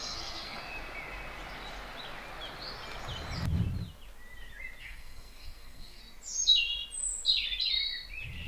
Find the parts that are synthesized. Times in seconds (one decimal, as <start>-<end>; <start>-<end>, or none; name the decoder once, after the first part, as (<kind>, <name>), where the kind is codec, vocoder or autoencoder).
0.0-0.6 (codec, SNAC); 4.8-6.0